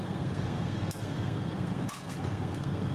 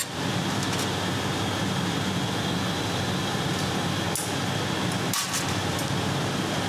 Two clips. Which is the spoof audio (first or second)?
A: first